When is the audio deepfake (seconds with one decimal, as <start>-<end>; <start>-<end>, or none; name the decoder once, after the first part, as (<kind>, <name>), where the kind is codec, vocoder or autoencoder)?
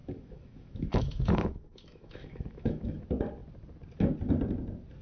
0.0-3.0 (autoencoder, DAC-VAE)